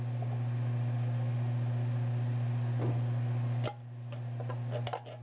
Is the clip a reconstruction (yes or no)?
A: no